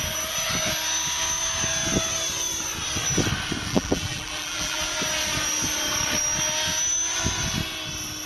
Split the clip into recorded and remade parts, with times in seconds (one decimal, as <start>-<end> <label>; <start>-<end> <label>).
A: 0.0-3.7 recorded; 3.7-4.8 remade; 4.8-8.3 recorded